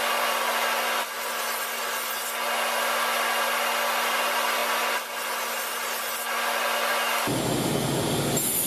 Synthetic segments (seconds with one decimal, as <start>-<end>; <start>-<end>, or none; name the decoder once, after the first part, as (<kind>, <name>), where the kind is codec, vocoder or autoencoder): none